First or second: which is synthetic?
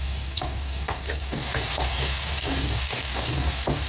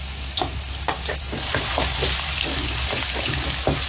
first